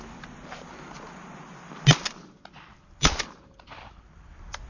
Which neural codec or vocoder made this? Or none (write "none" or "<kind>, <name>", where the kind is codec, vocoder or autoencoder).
none